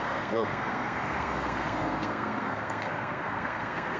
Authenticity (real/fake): fake